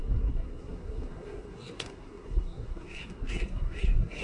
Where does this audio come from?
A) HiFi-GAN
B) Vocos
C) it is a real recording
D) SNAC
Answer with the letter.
D